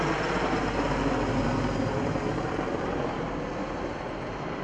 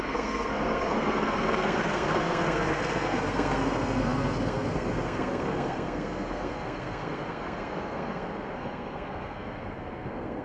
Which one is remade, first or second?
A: second